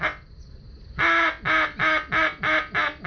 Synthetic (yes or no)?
no